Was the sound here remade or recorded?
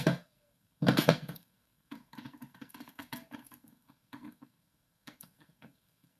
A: remade